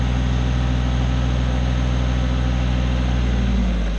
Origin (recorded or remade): recorded